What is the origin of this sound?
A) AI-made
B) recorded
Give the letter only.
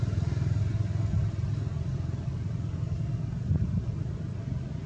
B